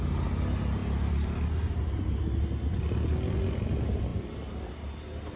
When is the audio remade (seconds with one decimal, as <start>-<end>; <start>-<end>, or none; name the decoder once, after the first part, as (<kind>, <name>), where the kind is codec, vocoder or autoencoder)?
0.8-2.4 (vocoder, BigVGAN v2)